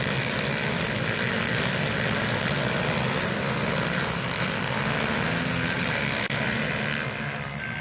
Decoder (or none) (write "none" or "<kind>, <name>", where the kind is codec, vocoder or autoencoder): none